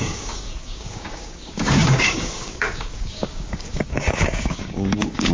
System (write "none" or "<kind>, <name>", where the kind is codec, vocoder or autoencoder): codec, DAC